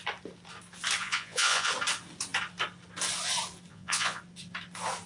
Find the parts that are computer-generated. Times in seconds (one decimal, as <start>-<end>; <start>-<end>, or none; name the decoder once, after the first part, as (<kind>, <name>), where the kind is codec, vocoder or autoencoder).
1.0-1.7 (vocoder, Vocos); 3.7-4.2